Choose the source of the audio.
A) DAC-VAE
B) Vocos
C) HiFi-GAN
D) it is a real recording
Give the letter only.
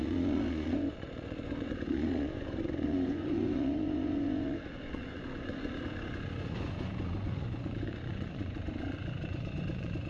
B